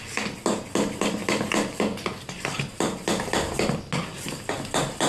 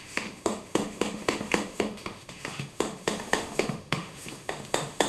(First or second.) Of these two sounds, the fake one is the second